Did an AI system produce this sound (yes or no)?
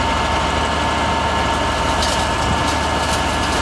no